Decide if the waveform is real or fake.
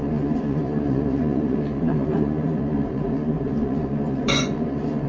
fake